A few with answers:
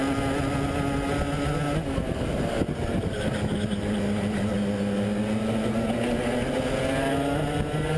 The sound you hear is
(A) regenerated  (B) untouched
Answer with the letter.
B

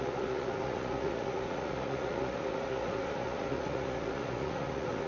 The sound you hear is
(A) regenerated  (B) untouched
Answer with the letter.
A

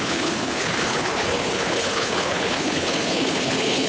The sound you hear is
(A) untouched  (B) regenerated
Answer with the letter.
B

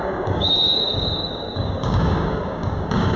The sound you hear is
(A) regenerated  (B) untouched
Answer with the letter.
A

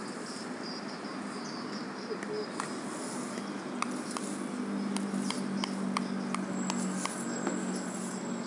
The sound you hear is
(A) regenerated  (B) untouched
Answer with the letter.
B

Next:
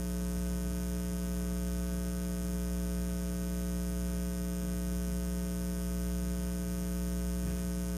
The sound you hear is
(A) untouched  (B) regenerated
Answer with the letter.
A